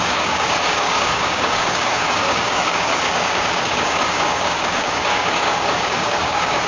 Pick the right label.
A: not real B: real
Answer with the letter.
A